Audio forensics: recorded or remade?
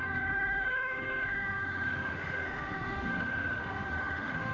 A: remade